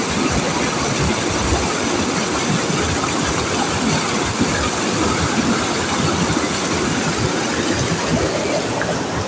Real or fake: real